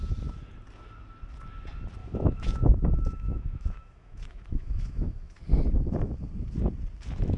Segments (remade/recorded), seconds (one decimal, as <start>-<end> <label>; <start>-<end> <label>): 0.0-2.0 recorded; 2.0-5.4 remade; 5.4-7.4 recorded